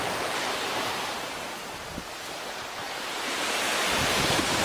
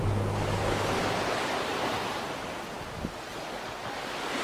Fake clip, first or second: first